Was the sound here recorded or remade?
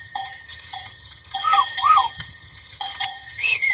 remade